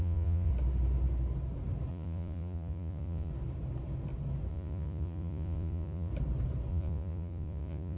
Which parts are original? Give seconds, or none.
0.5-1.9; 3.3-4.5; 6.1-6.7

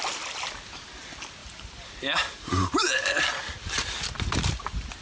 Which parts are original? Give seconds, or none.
0.0-1.4; 3.2-5.0